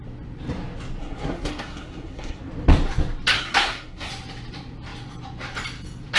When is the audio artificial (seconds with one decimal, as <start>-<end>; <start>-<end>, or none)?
1.0-2.4; 3.3-4.1